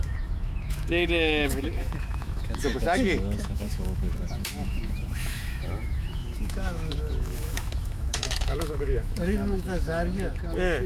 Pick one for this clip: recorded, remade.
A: remade